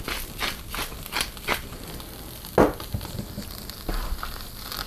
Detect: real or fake real